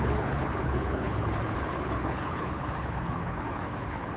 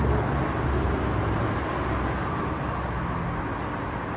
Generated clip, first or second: first